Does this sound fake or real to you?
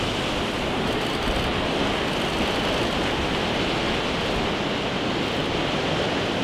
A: real